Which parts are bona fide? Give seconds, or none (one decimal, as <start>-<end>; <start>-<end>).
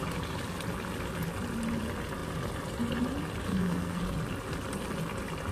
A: 0.0-3.5; 4.0-5.5